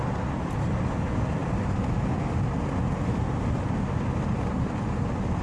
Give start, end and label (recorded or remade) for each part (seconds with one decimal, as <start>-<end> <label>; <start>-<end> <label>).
0.0-5.4 recorded